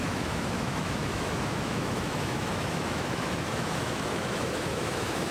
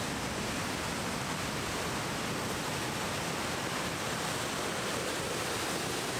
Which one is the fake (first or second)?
first